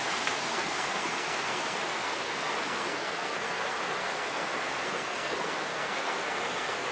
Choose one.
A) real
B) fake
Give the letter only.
B